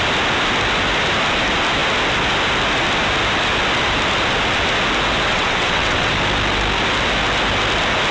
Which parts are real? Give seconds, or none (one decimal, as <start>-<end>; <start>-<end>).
0.0-5.3; 6.1-8.1